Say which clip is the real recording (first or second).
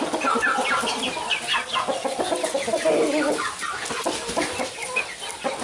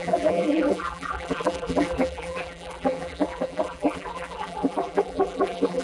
first